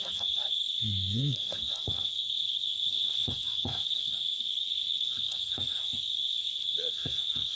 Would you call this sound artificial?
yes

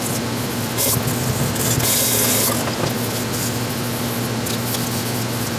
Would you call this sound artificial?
no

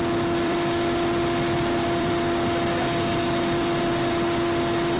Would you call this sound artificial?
yes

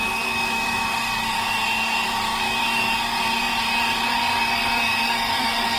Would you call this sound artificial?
yes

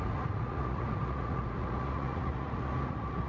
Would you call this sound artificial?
yes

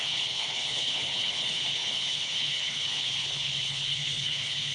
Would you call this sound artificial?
yes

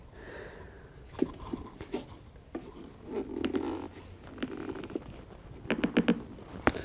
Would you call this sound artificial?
no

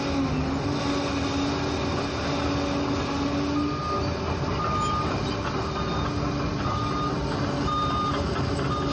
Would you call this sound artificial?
no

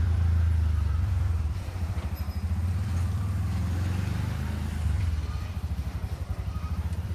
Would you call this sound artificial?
yes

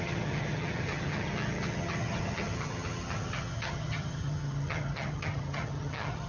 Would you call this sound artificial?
yes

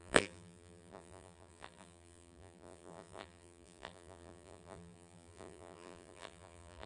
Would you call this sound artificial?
yes